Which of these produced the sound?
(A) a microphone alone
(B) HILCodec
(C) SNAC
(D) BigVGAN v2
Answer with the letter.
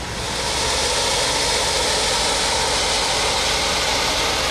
A